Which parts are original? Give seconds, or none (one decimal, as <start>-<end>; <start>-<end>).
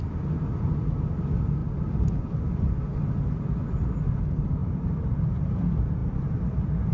0.0-1.6; 2.3-4.6; 5.6-6.0